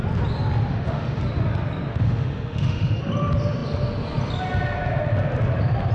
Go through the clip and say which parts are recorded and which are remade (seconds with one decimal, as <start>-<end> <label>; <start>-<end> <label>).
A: 0.0-0.7 recorded; 0.7-1.2 remade; 1.2-1.9 recorded; 1.9-3.0 remade; 3.0-5.9 recorded